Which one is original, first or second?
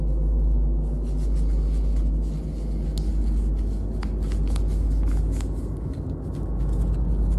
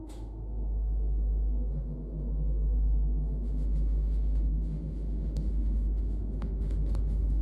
first